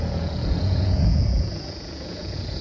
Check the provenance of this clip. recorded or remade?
remade